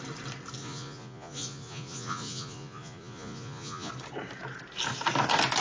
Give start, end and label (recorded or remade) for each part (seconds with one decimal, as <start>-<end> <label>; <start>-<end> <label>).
0.0-0.6 recorded; 0.6-3.9 remade; 3.9-5.6 recorded